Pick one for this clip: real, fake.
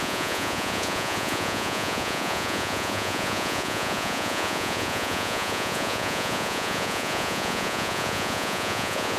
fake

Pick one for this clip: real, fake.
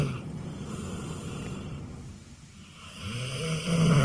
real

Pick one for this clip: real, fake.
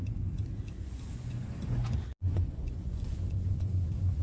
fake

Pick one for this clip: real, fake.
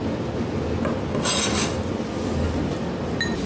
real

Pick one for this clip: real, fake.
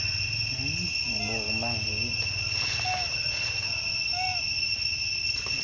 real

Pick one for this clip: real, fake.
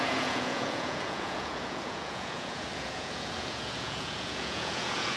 fake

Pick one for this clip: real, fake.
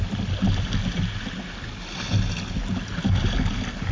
real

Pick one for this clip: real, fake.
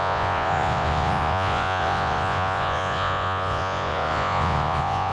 fake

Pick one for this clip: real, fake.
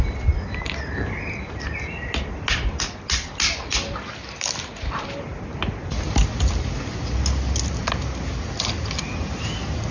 real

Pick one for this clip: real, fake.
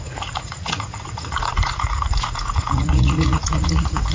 fake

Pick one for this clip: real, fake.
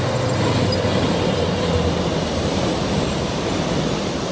real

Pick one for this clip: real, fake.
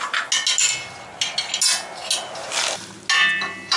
real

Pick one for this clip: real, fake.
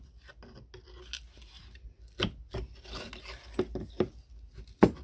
real